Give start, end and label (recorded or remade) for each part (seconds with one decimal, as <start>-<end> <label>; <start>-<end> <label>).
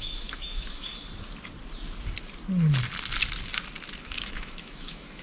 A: 0.0-0.9 remade; 0.9-4.0 recorded; 4.0-5.2 remade